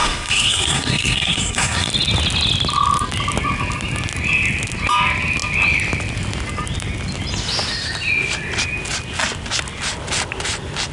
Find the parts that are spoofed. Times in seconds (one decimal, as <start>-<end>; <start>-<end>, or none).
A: 0.0-1.9